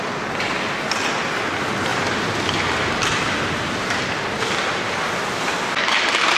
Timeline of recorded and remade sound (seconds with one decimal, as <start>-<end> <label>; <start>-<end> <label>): 0.0-1.9 recorded; 1.9-5.4 remade; 5.4-6.4 recorded